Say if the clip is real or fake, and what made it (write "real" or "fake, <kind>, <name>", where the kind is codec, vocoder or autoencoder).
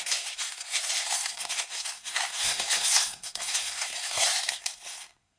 fake, codec, SNAC